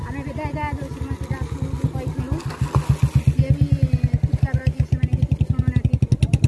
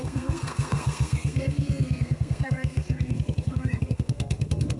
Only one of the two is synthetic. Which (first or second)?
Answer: second